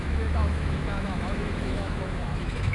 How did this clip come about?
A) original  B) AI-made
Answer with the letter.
B